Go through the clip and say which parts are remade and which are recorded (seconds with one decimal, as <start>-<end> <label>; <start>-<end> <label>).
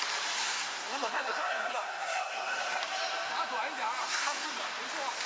0.0-0.4 recorded; 0.4-2.8 remade; 2.8-4.0 recorded; 4.0-4.6 remade; 4.6-5.3 recorded